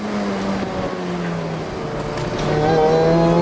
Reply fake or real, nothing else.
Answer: real